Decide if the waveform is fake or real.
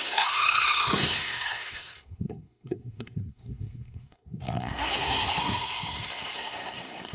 fake